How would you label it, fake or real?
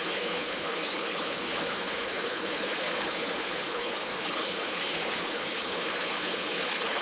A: fake